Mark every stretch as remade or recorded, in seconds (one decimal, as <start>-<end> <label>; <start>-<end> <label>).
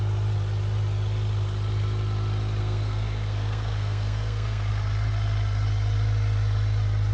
0.0-2.6 recorded; 2.6-4.7 remade; 4.7-7.1 recorded